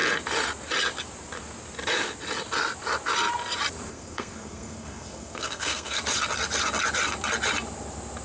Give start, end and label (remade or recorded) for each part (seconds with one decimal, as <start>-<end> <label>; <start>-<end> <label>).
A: 0.0-3.9 recorded; 3.9-6.0 remade; 6.0-8.2 recorded